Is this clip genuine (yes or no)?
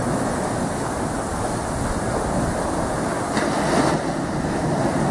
yes